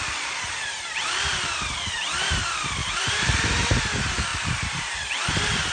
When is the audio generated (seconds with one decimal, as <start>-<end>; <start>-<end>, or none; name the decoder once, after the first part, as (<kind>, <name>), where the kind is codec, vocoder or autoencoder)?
2.8-3.8 (vocoder, BigVGAN v2); 4.3-5.1